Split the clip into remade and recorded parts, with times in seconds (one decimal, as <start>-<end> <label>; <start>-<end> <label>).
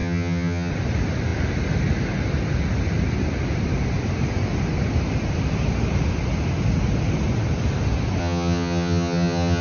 0.0-0.7 remade; 0.7-8.2 recorded; 8.2-9.6 remade